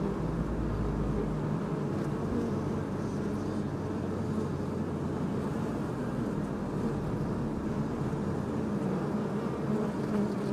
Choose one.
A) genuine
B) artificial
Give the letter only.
A